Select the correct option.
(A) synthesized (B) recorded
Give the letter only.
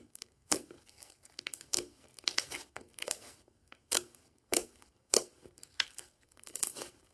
A